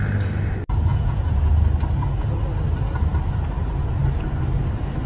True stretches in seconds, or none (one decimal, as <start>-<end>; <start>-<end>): 0.0-0.9; 1.5-5.1